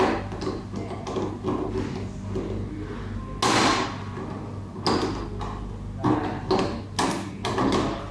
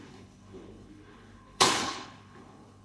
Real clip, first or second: first